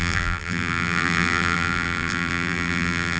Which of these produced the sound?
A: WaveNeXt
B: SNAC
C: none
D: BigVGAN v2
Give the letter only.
D